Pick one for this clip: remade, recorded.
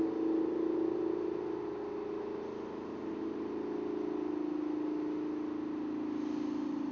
recorded